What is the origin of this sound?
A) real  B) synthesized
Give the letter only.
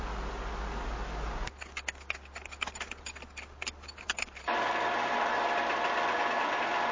A